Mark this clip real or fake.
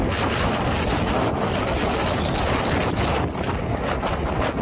real